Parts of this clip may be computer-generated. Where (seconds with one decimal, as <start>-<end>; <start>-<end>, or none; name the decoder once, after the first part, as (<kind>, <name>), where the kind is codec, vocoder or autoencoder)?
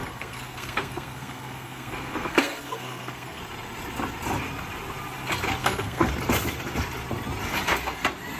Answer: 0.0-3.4 (codec, SNAC); 5.6-6.1